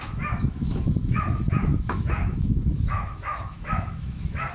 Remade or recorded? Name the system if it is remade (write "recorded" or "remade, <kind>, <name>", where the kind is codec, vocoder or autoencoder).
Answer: remade, autoencoder, DAC-VAE